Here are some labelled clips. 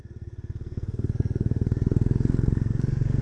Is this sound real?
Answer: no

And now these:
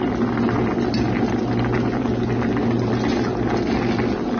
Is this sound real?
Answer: yes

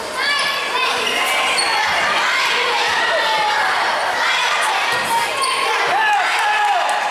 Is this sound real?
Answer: yes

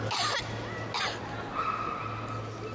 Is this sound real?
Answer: yes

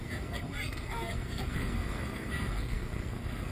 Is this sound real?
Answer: no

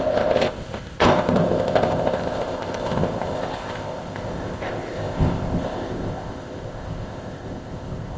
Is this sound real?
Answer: no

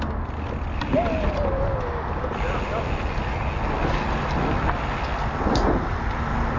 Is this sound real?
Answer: yes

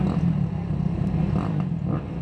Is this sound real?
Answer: yes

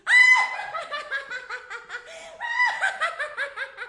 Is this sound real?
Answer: yes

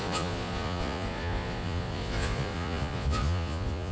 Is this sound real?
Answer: no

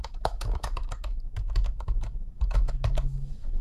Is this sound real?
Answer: no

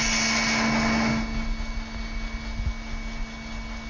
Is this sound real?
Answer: yes